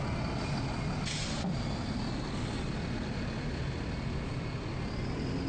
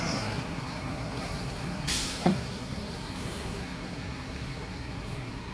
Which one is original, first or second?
first